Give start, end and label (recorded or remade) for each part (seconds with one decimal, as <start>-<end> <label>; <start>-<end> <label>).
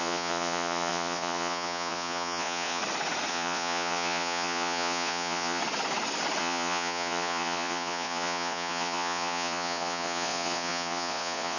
0.0-2.8 remade; 2.8-3.3 recorded; 3.3-5.6 remade; 5.6-6.4 recorded; 6.4-11.6 remade